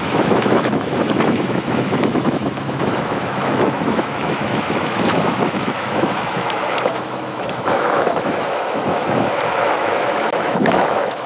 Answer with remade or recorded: remade